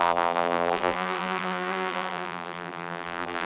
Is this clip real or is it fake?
fake